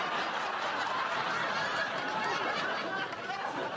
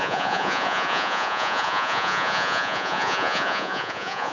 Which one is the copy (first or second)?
second